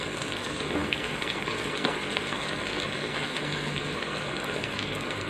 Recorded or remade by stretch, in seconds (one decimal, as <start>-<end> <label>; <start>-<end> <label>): 0.0-5.3 remade